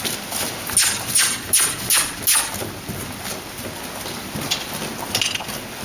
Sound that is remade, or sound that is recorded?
recorded